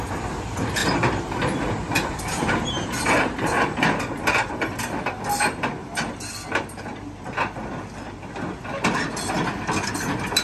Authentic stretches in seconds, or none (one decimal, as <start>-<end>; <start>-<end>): 0.0-0.8; 4.5-10.4